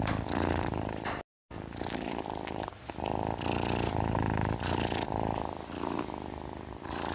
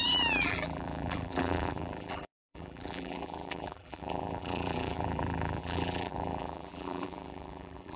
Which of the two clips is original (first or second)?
first